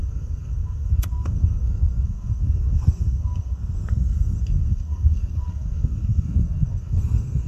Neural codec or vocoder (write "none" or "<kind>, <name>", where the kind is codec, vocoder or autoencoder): codec, SNAC